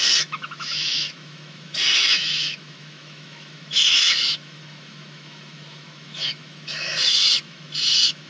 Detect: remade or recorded remade